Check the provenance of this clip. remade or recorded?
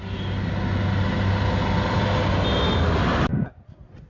recorded